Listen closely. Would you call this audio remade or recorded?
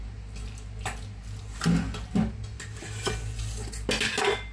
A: recorded